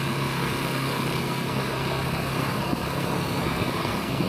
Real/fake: fake